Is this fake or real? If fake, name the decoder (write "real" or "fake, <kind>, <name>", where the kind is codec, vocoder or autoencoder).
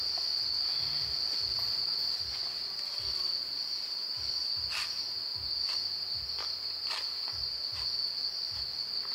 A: real